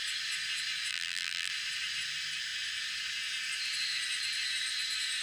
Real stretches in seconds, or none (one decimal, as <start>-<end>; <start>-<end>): 0.0-0.9; 1.5-5.2